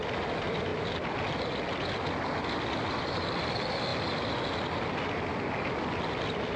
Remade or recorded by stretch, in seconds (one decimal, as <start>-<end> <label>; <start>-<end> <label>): 0.0-6.6 recorded